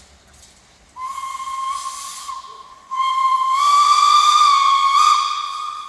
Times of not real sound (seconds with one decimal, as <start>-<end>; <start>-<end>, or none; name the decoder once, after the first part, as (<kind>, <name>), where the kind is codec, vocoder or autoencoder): 2.1-5.9 (vocoder, Vocos)